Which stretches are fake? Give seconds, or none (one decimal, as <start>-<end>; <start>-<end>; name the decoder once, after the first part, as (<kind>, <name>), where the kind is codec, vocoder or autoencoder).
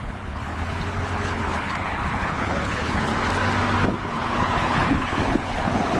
0.0-3.1 (codec, HILCodec); 3.9-6.0